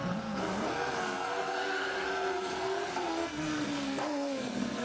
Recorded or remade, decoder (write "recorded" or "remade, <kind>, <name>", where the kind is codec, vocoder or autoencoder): remade, codec, SNAC